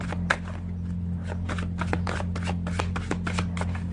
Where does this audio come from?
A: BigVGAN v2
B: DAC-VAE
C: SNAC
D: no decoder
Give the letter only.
D